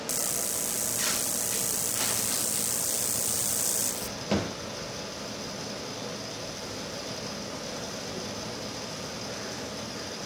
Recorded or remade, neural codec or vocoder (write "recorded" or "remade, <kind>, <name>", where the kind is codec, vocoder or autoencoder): recorded